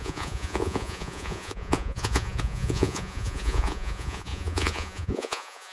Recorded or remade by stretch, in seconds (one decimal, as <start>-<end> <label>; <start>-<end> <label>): 0.0-5.7 remade